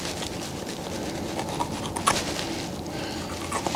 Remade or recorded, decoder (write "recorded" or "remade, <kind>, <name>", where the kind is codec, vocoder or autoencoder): recorded